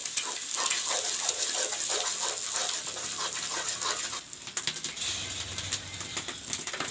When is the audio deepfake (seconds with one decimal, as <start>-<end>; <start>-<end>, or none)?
none